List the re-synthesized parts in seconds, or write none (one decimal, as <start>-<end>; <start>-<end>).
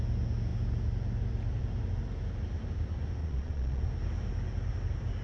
3.2-3.8